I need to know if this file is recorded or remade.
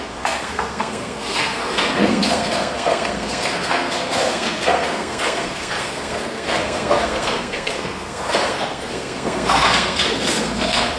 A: remade